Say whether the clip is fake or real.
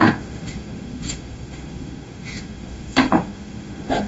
fake